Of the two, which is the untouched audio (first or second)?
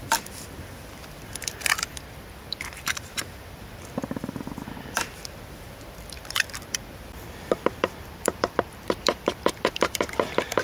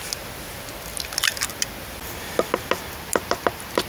second